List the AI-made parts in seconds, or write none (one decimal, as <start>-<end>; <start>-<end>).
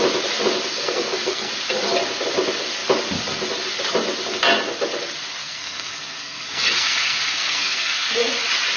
0.7-1.5; 5.4-8.3